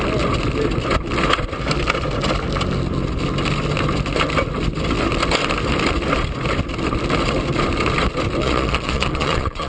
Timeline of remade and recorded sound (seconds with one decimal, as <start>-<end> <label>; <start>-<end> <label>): 0.0-8.4 recorded; 8.4-9.7 remade